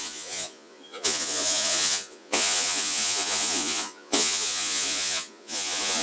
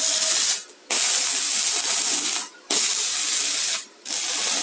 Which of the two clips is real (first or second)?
second